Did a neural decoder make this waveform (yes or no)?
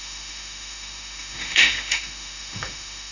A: yes